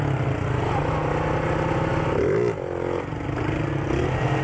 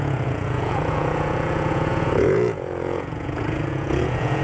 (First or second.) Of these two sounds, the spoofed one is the second